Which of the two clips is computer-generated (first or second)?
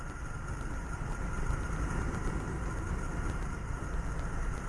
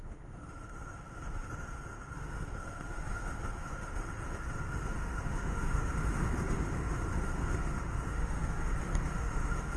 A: second